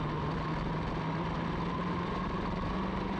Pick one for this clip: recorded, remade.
recorded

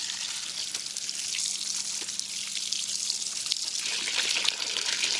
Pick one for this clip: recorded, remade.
recorded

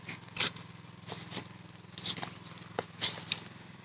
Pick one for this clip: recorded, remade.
recorded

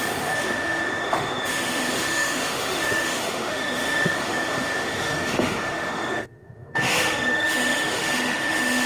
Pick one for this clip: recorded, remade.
remade